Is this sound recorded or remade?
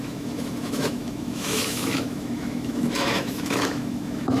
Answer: remade